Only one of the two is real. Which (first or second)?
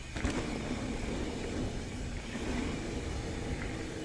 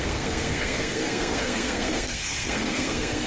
first